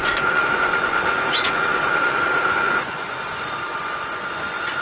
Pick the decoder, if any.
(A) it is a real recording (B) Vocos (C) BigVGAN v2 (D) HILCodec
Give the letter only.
B